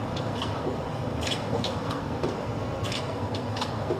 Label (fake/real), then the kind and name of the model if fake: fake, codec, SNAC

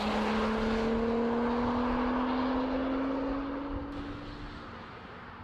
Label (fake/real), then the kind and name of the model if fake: real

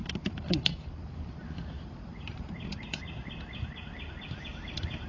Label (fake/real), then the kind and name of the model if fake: fake, vocoder, BigVGAN v2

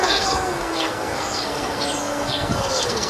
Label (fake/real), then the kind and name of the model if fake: fake, codec, SNAC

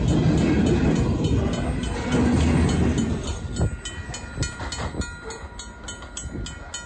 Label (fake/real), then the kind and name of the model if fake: real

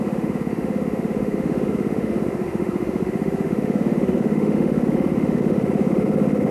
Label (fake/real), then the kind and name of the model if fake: fake, autoencoder, DAC-VAE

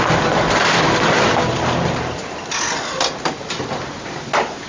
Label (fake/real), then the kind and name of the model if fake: real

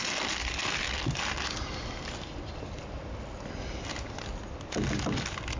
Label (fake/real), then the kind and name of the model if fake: real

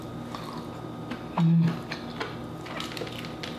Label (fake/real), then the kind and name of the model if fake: real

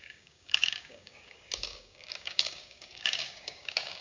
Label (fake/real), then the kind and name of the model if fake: fake, codec, DAC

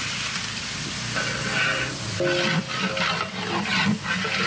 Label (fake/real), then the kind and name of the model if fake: real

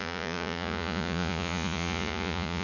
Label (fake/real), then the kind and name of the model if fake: fake, vocoder, Vocos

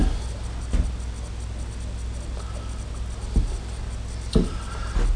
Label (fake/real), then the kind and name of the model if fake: real